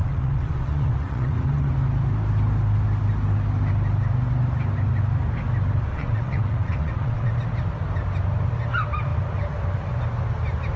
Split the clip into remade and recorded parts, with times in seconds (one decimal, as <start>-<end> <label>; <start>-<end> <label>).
0.0-1.7 remade; 1.7-5.9 recorded; 5.9-7.3 remade; 7.3-10.8 recorded